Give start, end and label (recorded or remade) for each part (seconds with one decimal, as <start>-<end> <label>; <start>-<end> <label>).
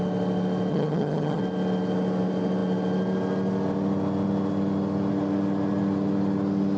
0.0-0.7 recorded; 0.7-1.4 remade; 1.4-6.8 recorded